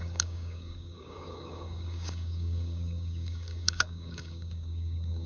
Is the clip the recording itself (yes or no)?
no